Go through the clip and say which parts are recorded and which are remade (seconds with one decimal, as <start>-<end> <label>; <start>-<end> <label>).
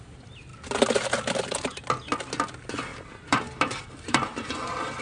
0.0-2.9 recorded; 2.9-4.5 remade; 4.5-5.0 recorded